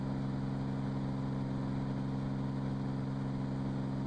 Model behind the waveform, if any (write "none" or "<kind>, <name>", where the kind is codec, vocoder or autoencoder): none